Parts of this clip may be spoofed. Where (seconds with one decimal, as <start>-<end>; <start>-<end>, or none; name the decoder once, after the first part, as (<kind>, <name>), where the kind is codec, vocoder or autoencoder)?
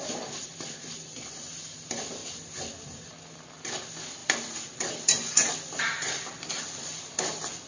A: 2.2-3.0 (vocoder, BigVGAN v2); 4.2-7.7